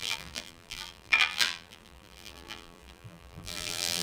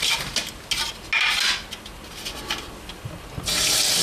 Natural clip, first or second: second